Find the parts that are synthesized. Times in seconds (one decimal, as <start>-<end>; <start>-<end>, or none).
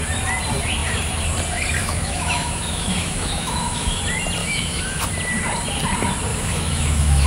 1.8-4.0; 4.4-5.0; 6.3-7.3